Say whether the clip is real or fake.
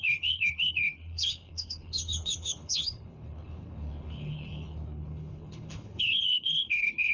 fake